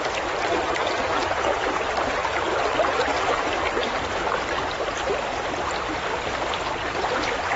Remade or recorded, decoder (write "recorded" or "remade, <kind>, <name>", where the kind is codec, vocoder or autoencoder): recorded